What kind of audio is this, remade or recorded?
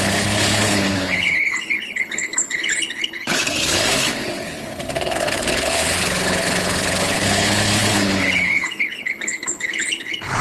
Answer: remade